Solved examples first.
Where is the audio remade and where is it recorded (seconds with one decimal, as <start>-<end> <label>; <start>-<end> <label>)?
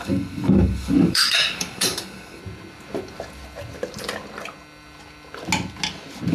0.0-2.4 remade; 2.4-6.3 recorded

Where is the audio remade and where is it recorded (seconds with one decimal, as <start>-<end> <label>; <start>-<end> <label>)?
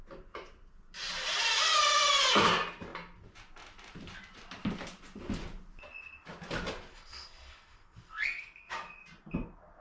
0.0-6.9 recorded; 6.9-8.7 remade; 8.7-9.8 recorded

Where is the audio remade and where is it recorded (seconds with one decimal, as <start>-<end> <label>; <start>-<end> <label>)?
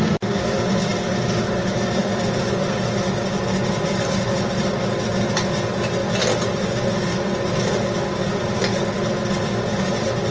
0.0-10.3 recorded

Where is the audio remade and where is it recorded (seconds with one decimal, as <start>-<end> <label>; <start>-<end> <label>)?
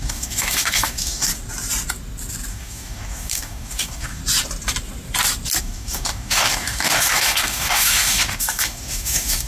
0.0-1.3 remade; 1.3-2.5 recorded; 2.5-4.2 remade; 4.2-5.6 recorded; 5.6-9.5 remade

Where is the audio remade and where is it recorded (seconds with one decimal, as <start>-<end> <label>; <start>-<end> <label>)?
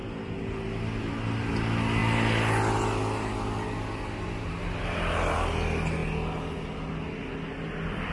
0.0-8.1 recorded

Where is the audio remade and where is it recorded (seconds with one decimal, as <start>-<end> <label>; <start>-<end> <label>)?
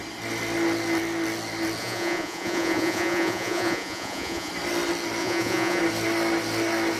0.0-1.8 recorded; 1.8-4.5 remade; 4.5-5.2 recorded; 5.2-5.8 remade; 5.8-7.0 recorded